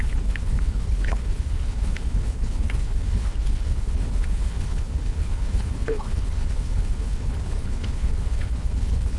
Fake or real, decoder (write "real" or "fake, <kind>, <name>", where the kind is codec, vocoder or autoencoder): fake, codec, HILCodec